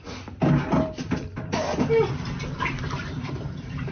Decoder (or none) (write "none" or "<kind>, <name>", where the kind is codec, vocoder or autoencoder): vocoder, BigVGAN v2